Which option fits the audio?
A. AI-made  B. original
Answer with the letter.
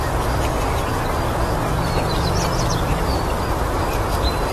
B